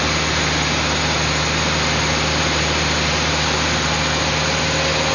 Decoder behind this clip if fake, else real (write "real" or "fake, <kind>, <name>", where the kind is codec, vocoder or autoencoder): real